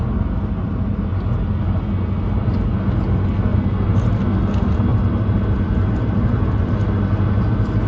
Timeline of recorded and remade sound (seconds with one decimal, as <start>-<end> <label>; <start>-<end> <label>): 0.0-3.5 recorded; 3.5-4.2 remade; 4.2-4.9 recorded; 4.9-6.2 remade; 6.2-7.9 recorded